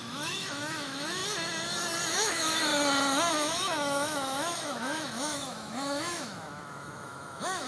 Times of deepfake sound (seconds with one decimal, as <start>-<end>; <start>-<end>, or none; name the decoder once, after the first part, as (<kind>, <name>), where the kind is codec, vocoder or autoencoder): 0.0-1.2 (autoencoder, DAC-VAE); 2.1-2.7; 3.3-7.7